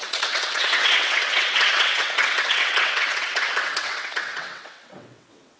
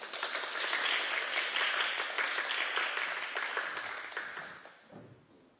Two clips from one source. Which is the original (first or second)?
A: second